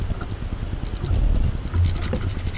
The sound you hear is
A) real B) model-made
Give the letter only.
A